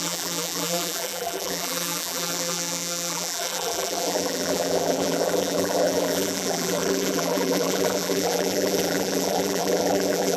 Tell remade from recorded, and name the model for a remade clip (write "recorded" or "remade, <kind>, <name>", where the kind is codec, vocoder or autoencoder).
remade, vocoder, BigVGAN v2